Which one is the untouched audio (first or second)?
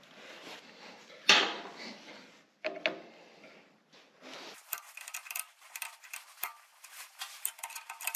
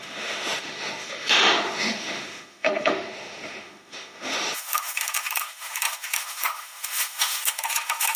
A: first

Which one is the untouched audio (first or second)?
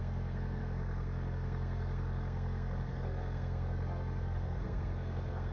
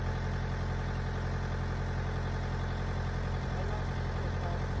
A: second